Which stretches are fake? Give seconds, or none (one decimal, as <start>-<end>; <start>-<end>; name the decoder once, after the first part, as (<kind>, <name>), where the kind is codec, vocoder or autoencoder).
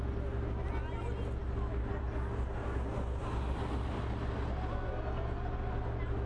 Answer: none